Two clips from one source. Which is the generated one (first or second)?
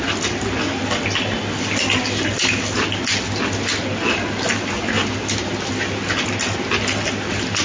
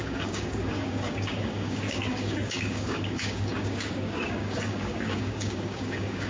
second